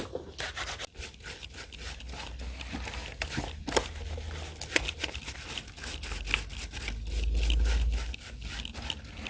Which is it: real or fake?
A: real